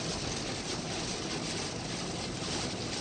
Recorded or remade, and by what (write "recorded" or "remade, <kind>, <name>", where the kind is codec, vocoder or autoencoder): recorded